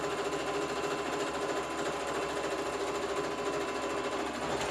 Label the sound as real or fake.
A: real